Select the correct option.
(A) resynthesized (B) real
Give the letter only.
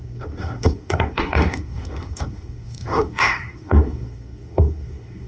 A